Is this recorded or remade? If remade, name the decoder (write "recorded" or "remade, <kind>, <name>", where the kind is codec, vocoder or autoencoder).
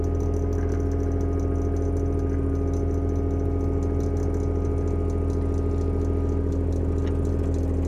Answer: recorded